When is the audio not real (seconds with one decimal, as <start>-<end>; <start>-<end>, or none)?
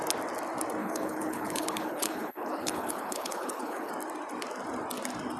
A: 0.8-3.9